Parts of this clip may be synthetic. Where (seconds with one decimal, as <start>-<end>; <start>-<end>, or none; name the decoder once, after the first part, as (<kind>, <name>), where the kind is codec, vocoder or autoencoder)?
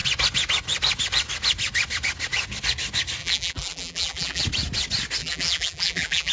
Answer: 3.2-4.4 (vocoder, BigVGAN v2); 5.2-6.3